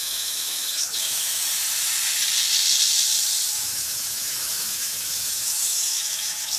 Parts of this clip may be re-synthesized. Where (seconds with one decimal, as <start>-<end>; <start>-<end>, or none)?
0.0-1.4; 3.5-6.6